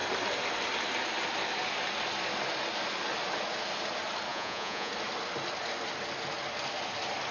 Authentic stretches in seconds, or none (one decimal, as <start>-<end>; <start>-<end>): 0.0-4.3; 4.9-7.3